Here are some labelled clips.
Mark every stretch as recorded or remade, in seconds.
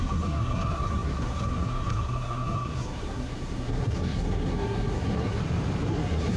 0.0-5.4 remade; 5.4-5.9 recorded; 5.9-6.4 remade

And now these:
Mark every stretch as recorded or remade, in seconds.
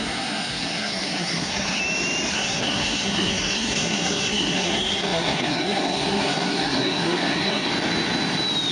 0.0-1.8 remade; 1.8-2.3 recorded; 2.3-7.7 remade; 7.7-8.7 recorded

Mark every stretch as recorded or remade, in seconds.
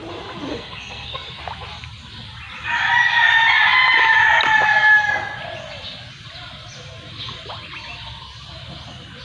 0.0-0.5 recorded; 0.5-1.4 remade; 1.4-9.2 recorded